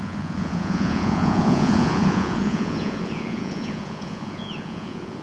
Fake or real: fake